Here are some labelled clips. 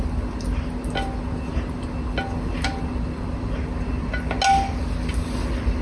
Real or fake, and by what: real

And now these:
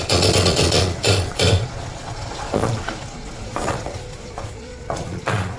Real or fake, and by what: fake, vocoder, Vocos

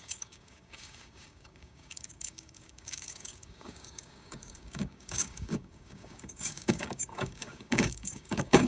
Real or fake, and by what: fake, codec, DAC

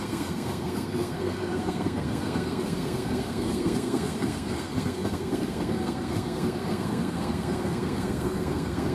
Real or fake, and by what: fake, codec, SNAC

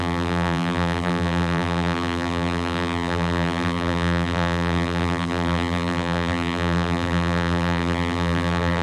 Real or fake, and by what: fake, vocoder, BigVGAN v2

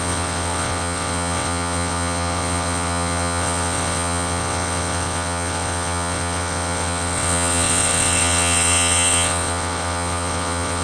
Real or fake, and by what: fake, vocoder, WaveNeXt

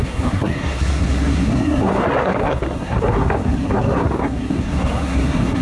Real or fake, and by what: fake, codec, SNAC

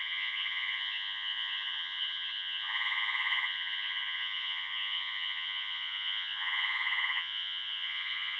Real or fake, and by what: fake, vocoder, Vocos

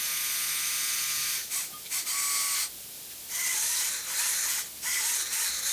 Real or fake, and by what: real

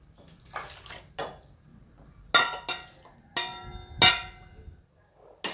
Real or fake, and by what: real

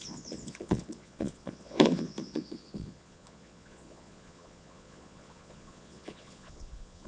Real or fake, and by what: fake, vocoder, Vocos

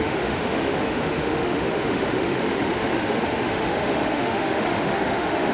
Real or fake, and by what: fake, autoencoder, DAC-VAE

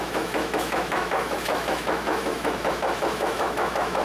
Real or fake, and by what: fake, autoencoder, DAC-VAE